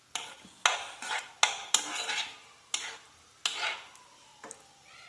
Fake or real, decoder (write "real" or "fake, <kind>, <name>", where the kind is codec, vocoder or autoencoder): real